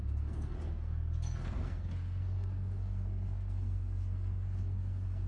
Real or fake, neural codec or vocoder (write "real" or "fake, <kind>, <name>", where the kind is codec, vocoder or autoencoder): fake, codec, SNAC